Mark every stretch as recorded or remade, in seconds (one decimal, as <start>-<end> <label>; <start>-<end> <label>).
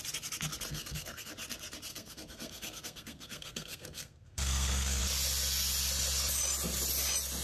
0.0-0.7 recorded; 0.7-1.3 remade; 1.3-1.9 recorded; 1.9-5.0 remade; 5.0-7.4 recorded